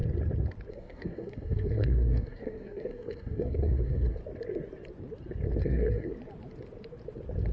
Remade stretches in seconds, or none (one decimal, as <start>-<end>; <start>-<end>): 0.7-4.2; 5.6-6.1